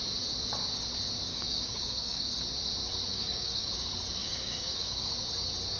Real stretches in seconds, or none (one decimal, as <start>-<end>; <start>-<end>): 0.0-1.3; 2.3-3.1; 3.7-4.2; 5.1-5.8